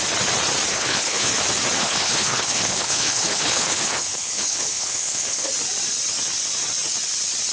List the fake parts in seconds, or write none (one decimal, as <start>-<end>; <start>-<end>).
0.7-1.3; 1.8-5.5

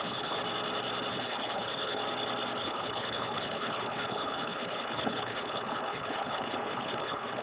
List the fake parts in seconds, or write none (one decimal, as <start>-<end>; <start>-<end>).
0.0-0.4; 1.1-2.0; 2.6-7.4

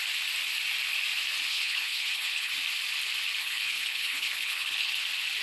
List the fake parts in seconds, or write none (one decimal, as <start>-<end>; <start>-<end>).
1.5-2.5; 3.4-4.9

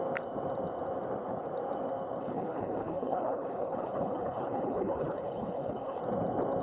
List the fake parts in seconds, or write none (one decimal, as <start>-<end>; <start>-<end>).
2.2-6.0

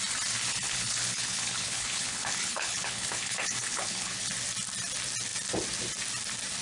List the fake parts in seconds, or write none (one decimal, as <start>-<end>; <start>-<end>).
0.5-4.3

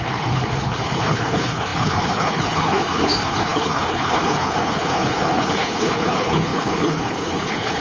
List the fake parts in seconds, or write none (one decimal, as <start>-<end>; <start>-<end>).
0.0-7.8